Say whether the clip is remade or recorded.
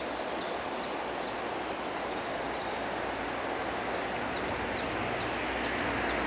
recorded